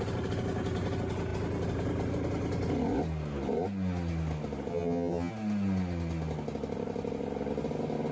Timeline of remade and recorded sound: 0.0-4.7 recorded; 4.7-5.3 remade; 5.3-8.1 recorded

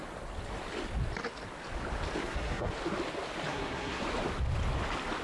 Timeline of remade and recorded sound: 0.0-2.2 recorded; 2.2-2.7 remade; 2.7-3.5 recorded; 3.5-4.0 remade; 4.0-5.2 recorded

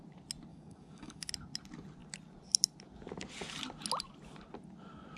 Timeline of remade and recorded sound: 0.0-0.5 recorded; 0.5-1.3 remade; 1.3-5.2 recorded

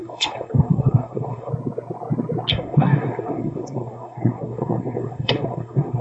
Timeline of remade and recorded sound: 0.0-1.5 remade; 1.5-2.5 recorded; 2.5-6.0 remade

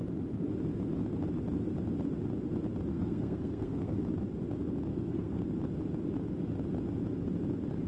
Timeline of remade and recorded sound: 0.0-2.9 recorded; 2.9-4.0 remade; 4.0-4.9 recorded; 4.9-5.4 remade; 5.4-7.9 recorded

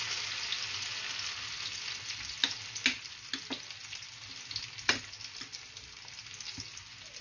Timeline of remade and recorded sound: 0.0-7.2 recorded

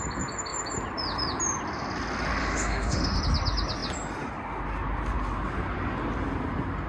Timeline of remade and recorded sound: 0.0-2.4 recorded; 2.4-3.2 remade; 3.2-6.9 recorded